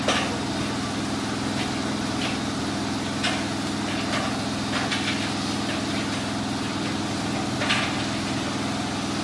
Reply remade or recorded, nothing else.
recorded